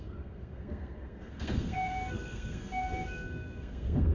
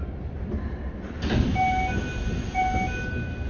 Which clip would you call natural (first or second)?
second